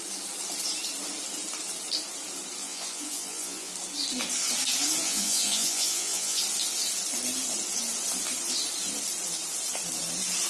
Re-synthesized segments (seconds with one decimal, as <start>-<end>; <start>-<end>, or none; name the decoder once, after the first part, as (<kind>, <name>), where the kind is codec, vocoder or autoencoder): 2.6-3.7 (vocoder, Vocos); 5.0-6.4

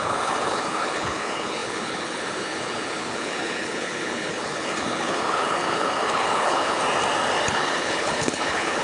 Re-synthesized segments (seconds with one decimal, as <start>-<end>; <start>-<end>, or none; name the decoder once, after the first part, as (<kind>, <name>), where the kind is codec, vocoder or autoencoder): 0.0-6.8 (codec, HILCodec); 7.5-8.8

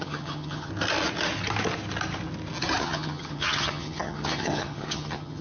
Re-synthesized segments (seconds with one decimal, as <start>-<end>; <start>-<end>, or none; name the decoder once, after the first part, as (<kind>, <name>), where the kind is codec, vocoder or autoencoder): 0.0-0.7 (vocoder, HiFi-GAN); 2.8-5.4

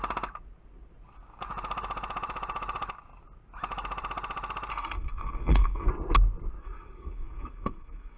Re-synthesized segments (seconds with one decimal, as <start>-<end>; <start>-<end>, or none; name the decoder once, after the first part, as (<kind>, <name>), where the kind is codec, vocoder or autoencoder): 4.7-5.9 (codec, SNAC); 6.6-8.2

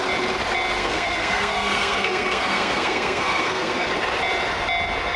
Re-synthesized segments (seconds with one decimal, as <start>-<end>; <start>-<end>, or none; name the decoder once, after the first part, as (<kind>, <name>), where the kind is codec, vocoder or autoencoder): 0.8-3.9 (codec, SNAC)

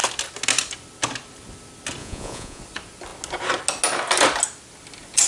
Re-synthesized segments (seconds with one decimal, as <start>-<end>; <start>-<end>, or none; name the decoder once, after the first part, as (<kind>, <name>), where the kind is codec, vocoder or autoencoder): 2.0-2.6 (vocoder, Vocos)

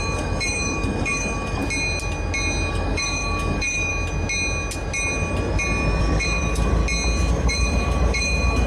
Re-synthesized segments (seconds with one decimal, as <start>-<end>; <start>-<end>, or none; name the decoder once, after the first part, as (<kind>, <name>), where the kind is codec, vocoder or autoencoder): 0.0-1.6 (codec, DAC); 2.7-3.9; 6.0-6.8; 7.3-8.7